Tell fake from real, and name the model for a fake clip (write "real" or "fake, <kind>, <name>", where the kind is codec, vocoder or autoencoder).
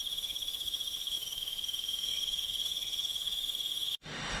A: fake, autoencoder, DAC-VAE